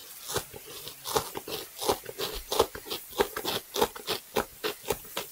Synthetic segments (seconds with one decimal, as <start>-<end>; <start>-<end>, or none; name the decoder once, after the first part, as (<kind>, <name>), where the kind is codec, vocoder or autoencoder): none